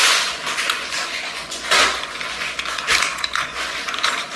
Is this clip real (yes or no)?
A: no